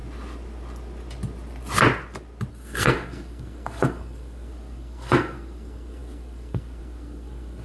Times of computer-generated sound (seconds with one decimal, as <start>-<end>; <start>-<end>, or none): 2.5-7.6